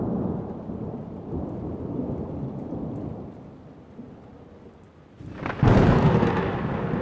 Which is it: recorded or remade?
recorded